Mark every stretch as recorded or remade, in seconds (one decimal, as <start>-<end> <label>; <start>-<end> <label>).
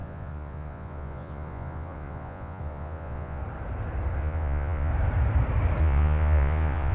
0.0-3.4 remade; 3.4-4.2 recorded; 4.2-4.9 remade; 4.9-5.8 recorded; 5.8-6.9 remade